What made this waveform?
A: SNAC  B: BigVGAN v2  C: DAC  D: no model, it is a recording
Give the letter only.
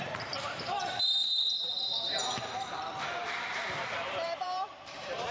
B